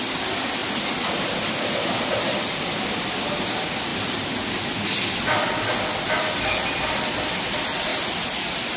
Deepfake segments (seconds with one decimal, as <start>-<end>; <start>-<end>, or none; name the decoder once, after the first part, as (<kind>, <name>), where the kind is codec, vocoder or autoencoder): 0.0-0.6 (vocoder, BigVGAN v2); 1.1-3.9; 6.2-7.9